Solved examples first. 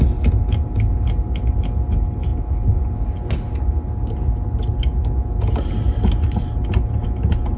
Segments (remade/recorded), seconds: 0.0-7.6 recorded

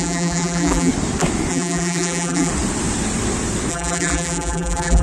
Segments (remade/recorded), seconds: 0.0-0.9 remade; 0.9-1.5 recorded; 1.5-2.5 remade; 2.5-3.7 recorded; 3.7-5.0 remade

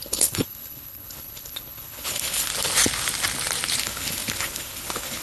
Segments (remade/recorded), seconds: 0.0-2.5 remade; 2.5-3.8 recorded; 3.8-5.2 remade

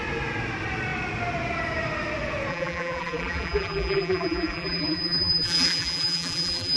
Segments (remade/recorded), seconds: 0.0-2.5 recorded; 2.5-6.8 remade

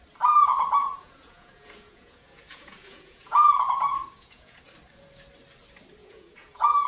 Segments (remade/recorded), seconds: 0.0-0.5 recorded; 0.5-4.6 remade; 4.6-6.0 recorded; 6.0-6.9 remade

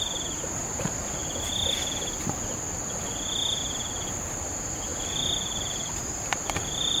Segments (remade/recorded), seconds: 0.0-1.2 remade; 1.2-3.6 recorded; 3.6-7.0 remade

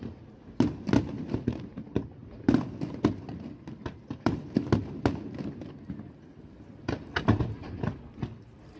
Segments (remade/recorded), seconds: 0.0-2.2 recorded; 2.2-4.5 remade; 4.5-8.8 recorded

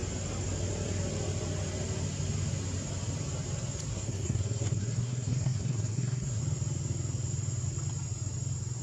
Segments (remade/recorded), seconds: 0.0-3.9 recorded; 3.9-6.4 remade; 6.4-8.8 recorded